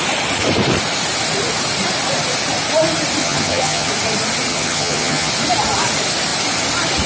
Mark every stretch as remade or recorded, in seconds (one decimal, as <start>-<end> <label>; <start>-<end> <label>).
0.0-3.2 recorded; 3.2-3.9 remade; 3.9-4.5 recorded; 4.5-5.3 remade; 5.3-7.1 recorded